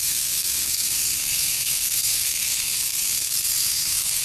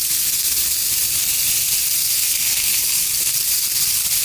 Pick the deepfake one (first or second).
first